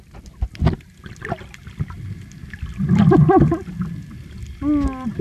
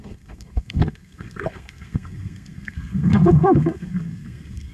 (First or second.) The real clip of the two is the first